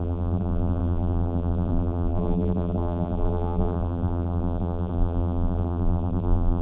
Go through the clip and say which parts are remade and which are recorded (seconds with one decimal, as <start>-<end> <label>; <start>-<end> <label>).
0.0-6.6 remade